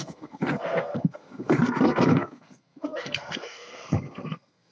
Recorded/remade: remade